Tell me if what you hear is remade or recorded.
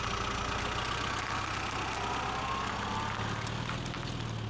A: recorded